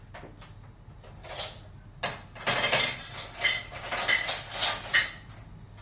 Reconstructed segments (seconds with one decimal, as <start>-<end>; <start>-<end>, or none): none